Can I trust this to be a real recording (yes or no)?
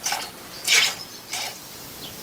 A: no